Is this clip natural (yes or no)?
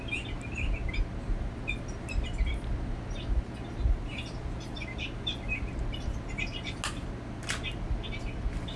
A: yes